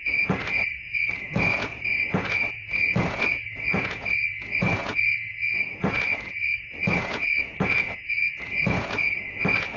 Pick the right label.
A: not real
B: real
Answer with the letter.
A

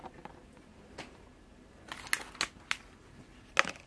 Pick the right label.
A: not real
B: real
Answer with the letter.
B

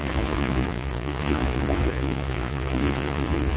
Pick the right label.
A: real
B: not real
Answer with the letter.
B